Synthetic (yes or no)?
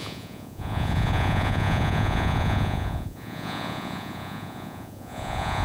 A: yes